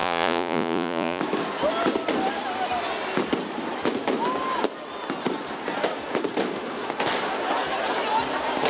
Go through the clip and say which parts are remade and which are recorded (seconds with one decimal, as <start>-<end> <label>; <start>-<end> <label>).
0.0-1.2 remade; 1.2-8.7 recorded